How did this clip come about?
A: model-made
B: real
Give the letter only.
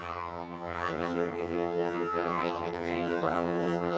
A